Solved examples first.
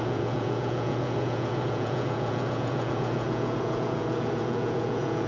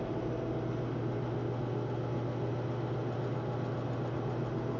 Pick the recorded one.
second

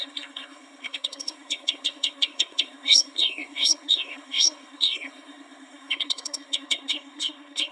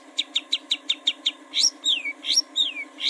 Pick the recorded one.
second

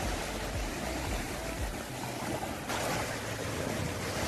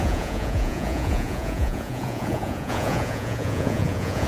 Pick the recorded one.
first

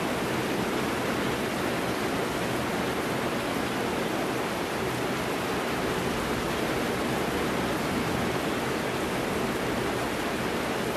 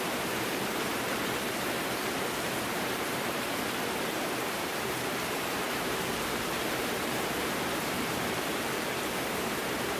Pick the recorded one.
first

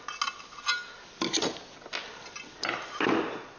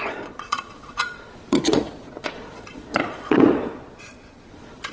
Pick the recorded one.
first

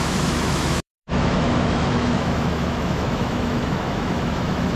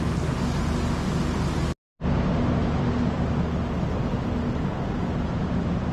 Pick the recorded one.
second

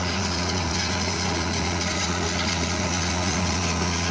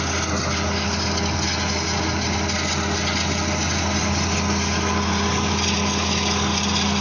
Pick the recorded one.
second